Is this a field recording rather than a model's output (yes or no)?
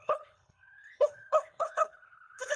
no